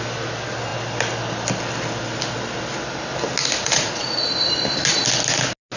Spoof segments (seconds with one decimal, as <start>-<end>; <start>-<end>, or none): 3.6-4.3